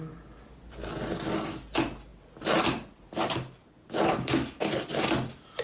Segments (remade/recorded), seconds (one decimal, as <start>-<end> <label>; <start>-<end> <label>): 0.0-5.6 recorded